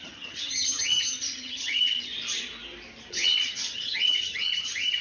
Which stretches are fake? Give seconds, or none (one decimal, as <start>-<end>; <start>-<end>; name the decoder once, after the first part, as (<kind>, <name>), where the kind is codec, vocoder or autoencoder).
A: 0.0-2.1 (vocoder, HiFi-GAN); 3.1-5.0